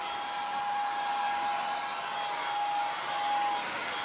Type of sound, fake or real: real